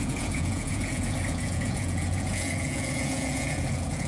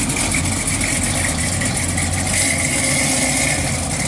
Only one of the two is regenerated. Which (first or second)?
first